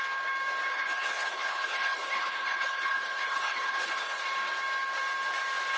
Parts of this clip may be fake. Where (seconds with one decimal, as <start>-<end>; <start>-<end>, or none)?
0.7-4.2